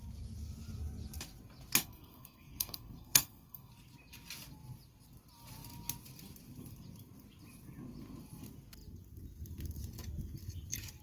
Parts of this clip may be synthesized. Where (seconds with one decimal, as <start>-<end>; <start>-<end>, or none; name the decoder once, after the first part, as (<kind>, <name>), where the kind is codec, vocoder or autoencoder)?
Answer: 1.8-3.7 (codec, SNAC)